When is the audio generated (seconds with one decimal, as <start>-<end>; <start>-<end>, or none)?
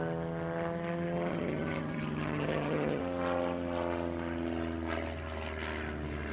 1.3-3.0